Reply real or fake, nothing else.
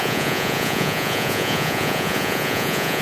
fake